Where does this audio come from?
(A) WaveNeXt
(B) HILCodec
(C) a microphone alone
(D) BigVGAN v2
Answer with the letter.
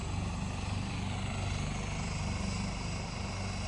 C